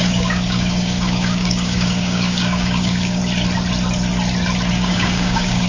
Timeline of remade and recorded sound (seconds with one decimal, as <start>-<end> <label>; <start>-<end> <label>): 0.0-3.2 remade; 3.2-4.7 recorded; 4.7-5.7 remade